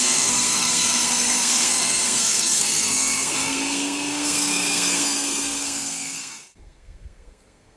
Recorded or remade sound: remade